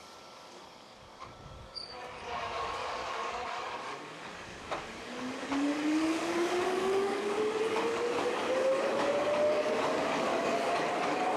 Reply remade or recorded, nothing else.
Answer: remade